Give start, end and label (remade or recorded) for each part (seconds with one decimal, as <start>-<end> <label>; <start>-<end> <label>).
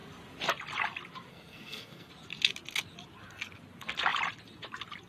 0.0-1.3 recorded; 1.3-2.1 remade; 2.1-5.1 recorded